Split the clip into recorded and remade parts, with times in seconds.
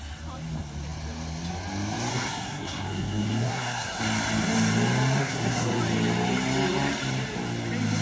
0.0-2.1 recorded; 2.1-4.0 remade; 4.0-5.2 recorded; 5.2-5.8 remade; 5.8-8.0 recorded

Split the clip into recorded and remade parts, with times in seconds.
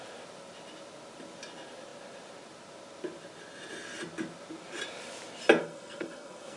0.0-5.6 recorded; 5.6-6.6 remade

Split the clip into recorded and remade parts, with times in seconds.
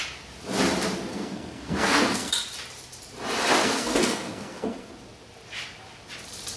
0.0-1.1 recorded; 1.1-2.3 remade; 2.3-3.6 recorded; 3.6-4.9 remade; 4.9-6.6 recorded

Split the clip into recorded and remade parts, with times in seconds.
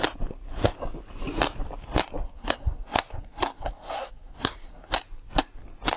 0.0-2.2 recorded; 2.2-4.9 remade; 4.9-6.0 recorded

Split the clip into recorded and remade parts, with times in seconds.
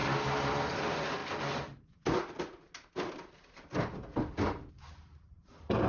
0.0-5.9 recorded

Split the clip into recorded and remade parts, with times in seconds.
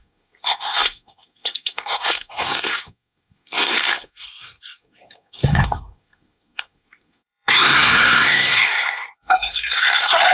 0.0-10.3 remade